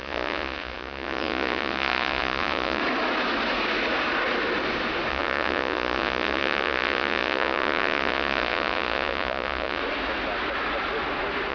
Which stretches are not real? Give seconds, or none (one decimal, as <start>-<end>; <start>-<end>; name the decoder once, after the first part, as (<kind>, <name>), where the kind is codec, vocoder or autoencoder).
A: 0.0-2.8 (vocoder, Vocos); 5.1-9.8